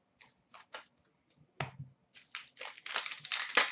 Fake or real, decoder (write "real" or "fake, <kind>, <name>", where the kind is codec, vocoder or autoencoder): real